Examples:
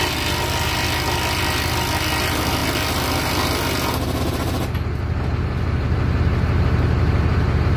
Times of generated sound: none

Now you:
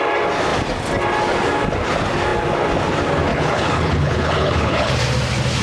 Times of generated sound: 3.3-4.9 (codec, HILCodec)

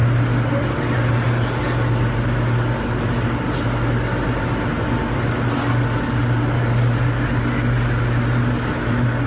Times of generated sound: none

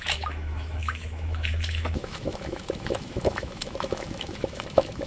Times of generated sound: 0.0-5.1 (autoencoder, DAC-VAE)